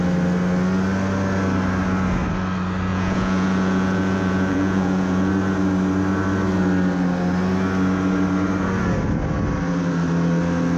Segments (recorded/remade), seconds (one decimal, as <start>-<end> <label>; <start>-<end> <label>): 0.0-2.9 recorded; 2.9-5.3 remade; 5.3-10.8 recorded